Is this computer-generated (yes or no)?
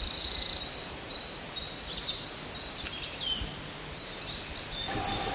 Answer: no